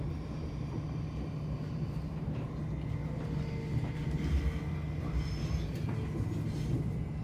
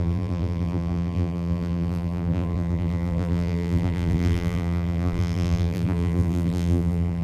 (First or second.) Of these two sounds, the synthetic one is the second